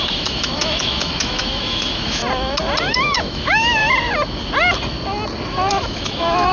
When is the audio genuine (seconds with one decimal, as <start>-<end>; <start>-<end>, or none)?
2.2-2.8; 3.8-5.7